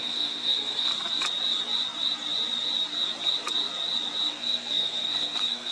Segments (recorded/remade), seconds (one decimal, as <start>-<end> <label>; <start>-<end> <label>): 0.0-0.9 remade; 0.9-4.3 recorded; 4.3-5.7 remade